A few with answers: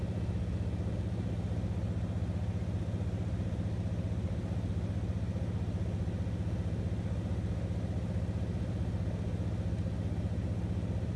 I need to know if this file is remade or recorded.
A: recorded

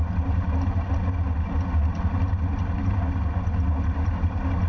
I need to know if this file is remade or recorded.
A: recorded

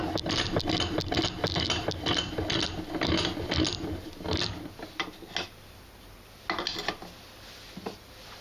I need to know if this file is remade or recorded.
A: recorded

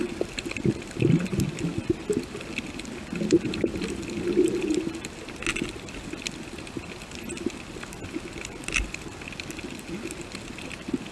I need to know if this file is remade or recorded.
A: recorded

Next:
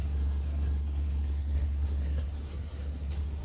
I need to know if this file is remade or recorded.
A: remade